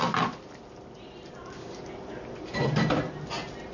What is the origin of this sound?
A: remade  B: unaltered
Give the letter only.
B